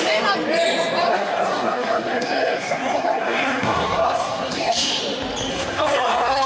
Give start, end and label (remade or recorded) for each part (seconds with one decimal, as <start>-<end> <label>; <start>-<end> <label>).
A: 0.0-1.1 recorded; 1.1-5.0 remade; 5.0-5.5 recorded; 5.5-6.5 remade